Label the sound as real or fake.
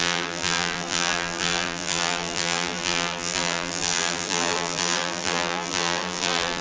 fake